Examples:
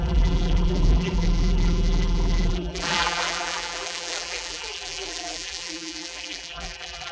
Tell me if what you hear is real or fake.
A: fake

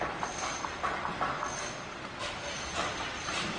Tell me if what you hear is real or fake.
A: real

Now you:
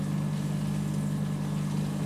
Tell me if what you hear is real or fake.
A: real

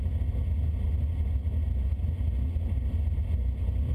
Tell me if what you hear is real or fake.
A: real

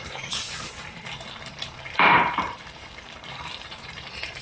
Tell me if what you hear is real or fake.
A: fake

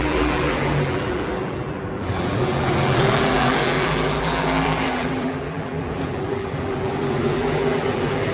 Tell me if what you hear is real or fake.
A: fake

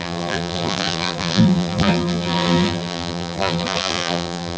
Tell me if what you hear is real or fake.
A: fake